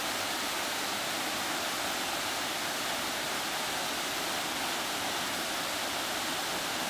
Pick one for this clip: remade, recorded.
remade